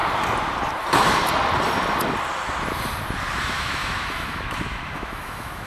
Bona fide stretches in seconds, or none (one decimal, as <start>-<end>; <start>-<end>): 0.0-3.4